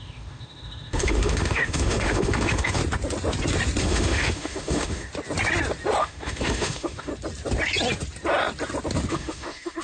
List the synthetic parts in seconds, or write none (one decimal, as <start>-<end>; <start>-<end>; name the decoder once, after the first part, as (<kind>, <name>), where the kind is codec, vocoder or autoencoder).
0.0-2.8 (autoencoder, DAC-VAE); 3.8-5.1; 6.0-7.1; 9.1-9.8

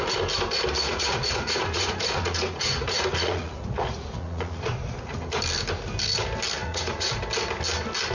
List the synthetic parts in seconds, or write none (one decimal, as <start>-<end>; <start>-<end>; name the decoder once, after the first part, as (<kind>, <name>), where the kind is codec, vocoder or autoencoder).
0.9-5.2 (vocoder, Vocos); 6.6-7.2

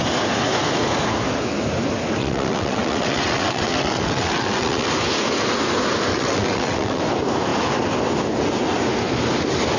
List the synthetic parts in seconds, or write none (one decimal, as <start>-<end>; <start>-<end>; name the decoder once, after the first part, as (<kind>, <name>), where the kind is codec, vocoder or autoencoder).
2.2-4.9 (vocoder, WaveNeXt); 6.1-7.0

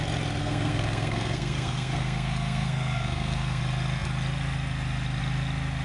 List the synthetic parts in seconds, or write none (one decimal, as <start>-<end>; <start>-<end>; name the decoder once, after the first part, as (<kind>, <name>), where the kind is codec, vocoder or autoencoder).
0.4-3.6 (codec, SNAC)

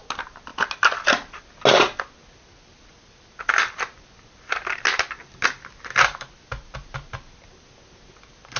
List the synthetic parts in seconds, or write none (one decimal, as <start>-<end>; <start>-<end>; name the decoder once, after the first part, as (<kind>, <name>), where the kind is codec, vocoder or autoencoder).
none

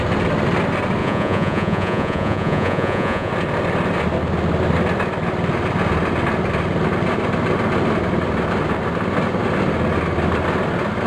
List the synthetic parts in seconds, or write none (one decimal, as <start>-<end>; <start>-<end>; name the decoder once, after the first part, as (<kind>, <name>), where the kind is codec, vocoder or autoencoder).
1.0-3.3 (vocoder, Vocos)

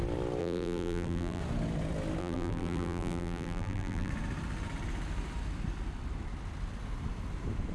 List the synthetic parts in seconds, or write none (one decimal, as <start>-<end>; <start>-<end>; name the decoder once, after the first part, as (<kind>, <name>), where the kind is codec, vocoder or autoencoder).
0.4-1.4 (vocoder, BigVGAN v2); 2.2-4.1

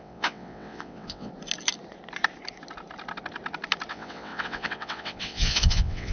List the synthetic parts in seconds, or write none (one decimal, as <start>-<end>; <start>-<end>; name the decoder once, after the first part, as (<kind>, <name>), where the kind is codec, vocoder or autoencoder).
0.0-1.3 (vocoder, WaveNeXt); 3.9-6.1